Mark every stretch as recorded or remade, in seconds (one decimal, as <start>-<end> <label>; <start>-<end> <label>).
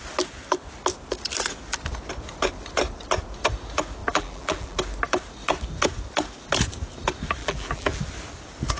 0.0-4.0 recorded; 4.0-4.8 remade; 4.8-7.4 recorded; 7.4-8.0 remade; 8.0-8.8 recorded